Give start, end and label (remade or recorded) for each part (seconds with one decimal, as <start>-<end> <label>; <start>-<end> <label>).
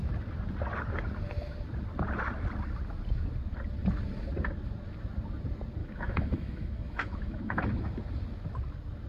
0.0-5.8 recorded; 5.8-7.7 remade; 7.7-9.1 recorded